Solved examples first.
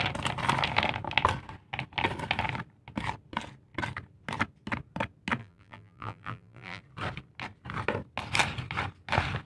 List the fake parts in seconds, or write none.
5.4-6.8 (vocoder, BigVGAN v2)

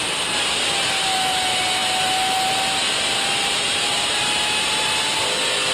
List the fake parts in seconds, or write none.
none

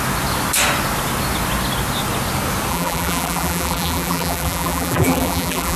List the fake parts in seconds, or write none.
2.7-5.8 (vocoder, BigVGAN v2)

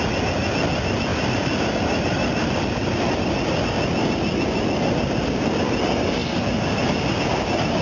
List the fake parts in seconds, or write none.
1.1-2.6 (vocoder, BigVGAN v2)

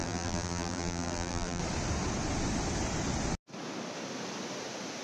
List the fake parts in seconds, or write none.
0.0-1.6 (vocoder, BigVGAN v2)